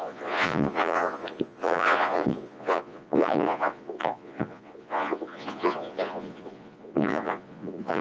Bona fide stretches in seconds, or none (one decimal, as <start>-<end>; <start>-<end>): none